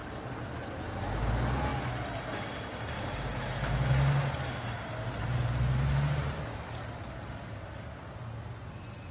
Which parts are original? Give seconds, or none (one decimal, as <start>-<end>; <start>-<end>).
0.0-5.2; 6.8-9.1